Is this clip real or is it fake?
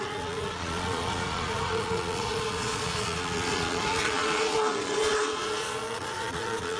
fake